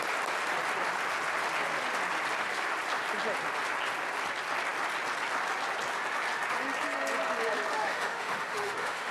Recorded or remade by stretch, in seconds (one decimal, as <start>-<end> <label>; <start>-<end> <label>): 0.0-7.7 recorded; 7.7-9.1 remade